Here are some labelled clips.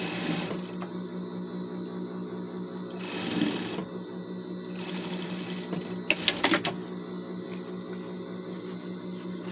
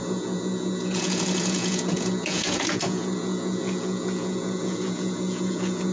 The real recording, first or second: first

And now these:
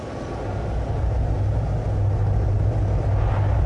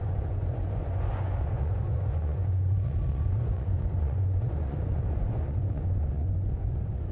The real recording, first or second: first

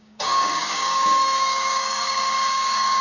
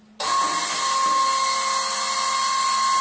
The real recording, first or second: second